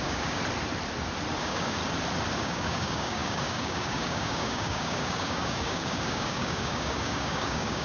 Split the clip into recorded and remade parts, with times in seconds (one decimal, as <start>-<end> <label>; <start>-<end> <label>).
0.0-0.4 remade; 0.4-1.4 recorded; 1.4-1.8 remade; 1.8-2.4 recorded; 2.4-7.8 remade